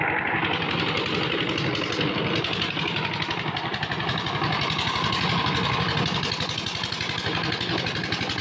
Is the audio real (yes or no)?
yes